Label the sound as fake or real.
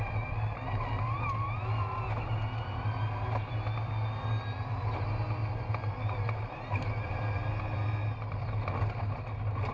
real